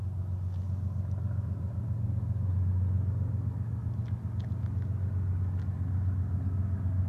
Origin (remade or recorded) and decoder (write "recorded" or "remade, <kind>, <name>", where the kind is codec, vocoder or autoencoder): recorded